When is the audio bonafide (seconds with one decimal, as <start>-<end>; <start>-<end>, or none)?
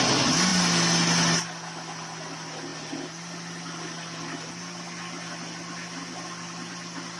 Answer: 0.0-7.2